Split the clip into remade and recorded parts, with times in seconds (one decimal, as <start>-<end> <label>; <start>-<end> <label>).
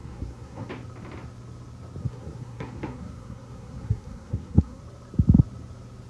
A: 0.0-0.7 remade; 0.7-2.0 recorded; 2.0-4.8 remade; 4.8-6.1 recorded